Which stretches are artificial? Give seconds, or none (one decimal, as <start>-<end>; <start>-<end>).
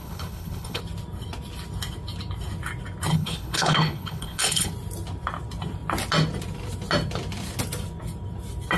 0.0-0.8; 3.1-4.7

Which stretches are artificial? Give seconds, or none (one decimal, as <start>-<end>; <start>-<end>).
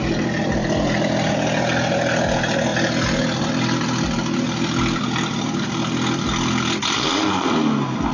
none